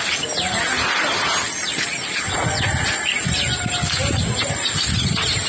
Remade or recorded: recorded